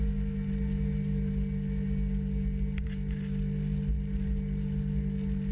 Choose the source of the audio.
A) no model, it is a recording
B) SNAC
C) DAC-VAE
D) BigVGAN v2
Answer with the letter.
A